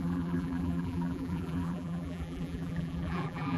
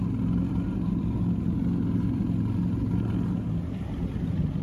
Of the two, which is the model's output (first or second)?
first